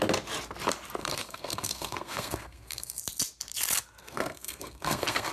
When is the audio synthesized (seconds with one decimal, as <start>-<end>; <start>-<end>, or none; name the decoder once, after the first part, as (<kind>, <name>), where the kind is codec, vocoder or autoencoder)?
1.0-3.0 (codec, SNAC); 4.0-5.3